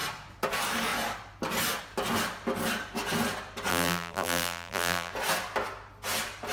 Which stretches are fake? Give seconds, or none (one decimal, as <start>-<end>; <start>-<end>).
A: 3.7-5.1

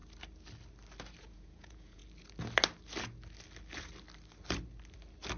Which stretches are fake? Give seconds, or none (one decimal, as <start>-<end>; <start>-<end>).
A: 1.2-2.0

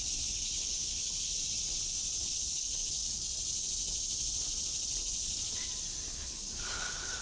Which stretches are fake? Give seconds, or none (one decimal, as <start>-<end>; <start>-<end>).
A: 0.0-1.3; 2.2-3.0; 6.1-7.2

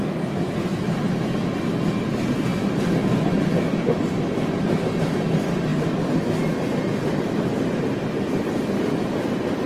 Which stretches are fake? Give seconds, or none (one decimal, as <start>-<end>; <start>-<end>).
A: none

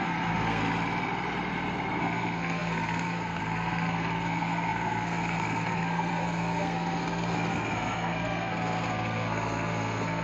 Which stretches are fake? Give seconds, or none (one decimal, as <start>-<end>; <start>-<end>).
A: 0.0-0.6; 2.0-10.2

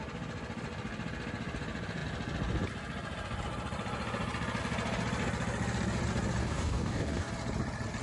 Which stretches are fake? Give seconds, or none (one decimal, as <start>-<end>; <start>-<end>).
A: 6.4-7.3

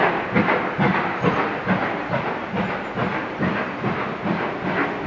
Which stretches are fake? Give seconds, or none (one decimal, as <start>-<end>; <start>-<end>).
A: none

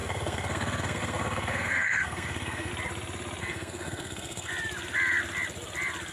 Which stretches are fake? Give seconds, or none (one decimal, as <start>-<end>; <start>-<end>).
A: 0.0-2.7; 3.4-4.5